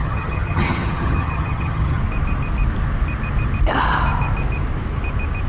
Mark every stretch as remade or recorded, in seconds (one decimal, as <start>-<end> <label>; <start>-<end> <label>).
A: 0.0-2.0 remade; 2.0-5.5 recorded

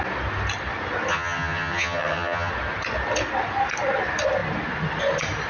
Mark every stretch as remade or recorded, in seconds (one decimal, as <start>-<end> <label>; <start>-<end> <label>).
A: 0.0-1.1 recorded; 1.1-2.5 remade; 2.5-5.5 recorded

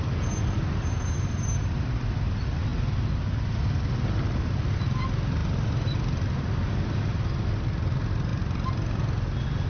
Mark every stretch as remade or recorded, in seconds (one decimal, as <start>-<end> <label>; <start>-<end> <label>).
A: 0.0-9.7 recorded

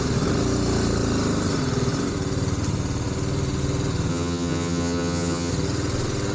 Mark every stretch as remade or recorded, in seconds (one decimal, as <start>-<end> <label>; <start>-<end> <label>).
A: 0.0-4.1 recorded; 4.1-5.5 remade; 5.5-6.3 recorded

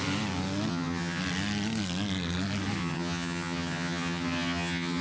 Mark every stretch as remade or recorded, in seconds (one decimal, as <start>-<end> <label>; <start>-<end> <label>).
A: 0.0-0.7 recorded; 0.7-1.2 remade; 1.2-2.8 recorded; 2.8-5.0 remade

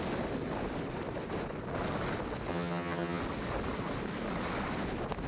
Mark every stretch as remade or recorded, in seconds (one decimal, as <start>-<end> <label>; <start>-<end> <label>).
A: 0.0-2.5 recorded; 2.5-3.2 remade; 3.2-5.3 recorded